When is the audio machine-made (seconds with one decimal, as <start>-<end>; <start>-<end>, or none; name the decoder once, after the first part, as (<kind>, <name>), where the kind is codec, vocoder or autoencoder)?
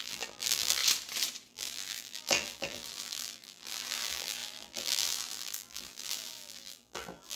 0.0-0.8 (vocoder, BigVGAN v2); 1.5-7.4